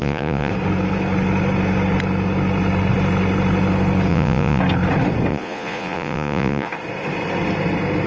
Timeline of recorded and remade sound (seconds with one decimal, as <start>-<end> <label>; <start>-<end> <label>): 0.0-0.5 remade; 0.5-4.1 recorded; 4.1-4.6 remade; 4.6-5.3 recorded; 5.3-6.7 remade; 6.7-8.1 recorded